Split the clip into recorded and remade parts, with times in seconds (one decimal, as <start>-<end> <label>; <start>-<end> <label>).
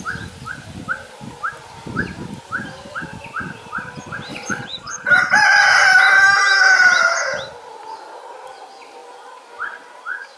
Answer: 0.0-4.3 recorded; 4.3-5.1 remade; 5.1-10.4 recorded